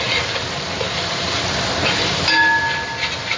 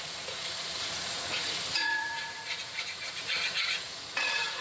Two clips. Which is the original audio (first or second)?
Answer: first